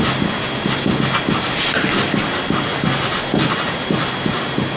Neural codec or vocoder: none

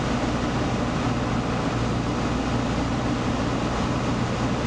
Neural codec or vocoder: none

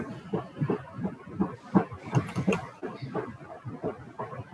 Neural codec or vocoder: none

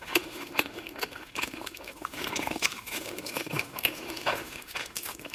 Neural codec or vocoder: autoencoder, DAC-VAE